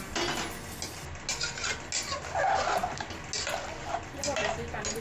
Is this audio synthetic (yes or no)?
no